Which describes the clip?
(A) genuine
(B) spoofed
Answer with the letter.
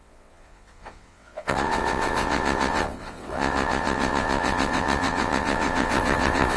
B